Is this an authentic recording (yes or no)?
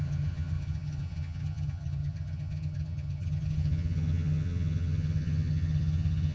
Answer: no